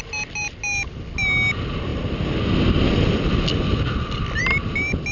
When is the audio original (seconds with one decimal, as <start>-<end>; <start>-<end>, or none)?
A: 0.0-5.1